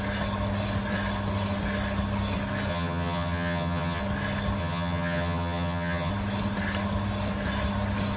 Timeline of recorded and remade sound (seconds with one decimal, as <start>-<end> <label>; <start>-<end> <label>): 0.0-2.7 recorded; 2.7-4.0 remade; 4.0-4.6 recorded; 4.6-6.1 remade; 6.1-8.2 recorded